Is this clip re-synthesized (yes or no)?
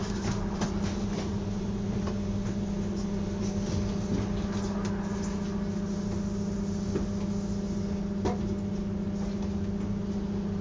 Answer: no